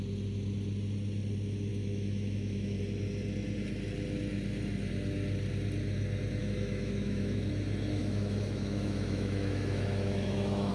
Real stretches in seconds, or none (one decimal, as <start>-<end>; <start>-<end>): 0.0-1.7; 2.8-6.4; 7.5-8.0